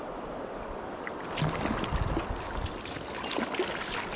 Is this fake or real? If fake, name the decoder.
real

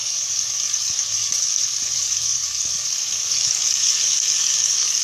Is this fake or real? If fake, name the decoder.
fake, codec, DAC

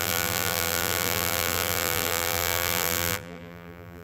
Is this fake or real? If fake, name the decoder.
fake, vocoder, BigVGAN v2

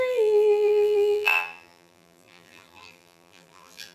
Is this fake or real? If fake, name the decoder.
fake, vocoder, BigVGAN v2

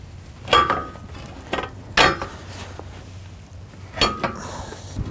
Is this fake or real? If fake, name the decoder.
real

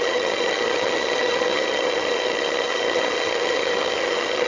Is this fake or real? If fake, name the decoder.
fake, vocoder, HiFi-GAN